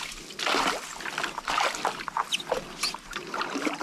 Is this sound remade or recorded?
recorded